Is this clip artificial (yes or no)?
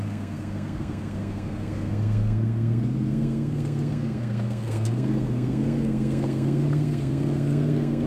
yes